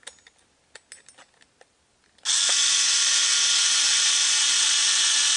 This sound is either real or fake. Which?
real